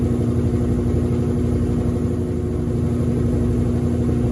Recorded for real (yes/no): yes